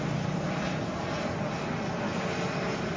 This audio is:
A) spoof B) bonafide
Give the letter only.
B